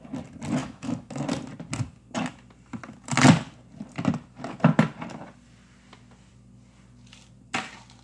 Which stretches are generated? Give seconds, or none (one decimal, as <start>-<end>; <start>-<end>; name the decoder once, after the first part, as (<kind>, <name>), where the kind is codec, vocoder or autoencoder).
0.6-1.1 (autoencoder, DAC-VAE)